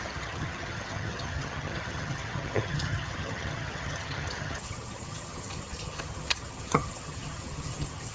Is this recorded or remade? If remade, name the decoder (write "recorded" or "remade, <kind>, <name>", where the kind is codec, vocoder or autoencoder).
remade, vocoder, HiFi-GAN